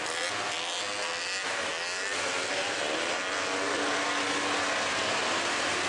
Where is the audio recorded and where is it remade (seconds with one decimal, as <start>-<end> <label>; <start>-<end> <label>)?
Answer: 0.0-5.9 recorded